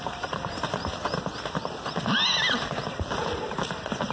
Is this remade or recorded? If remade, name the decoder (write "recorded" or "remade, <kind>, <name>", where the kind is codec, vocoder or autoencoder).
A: recorded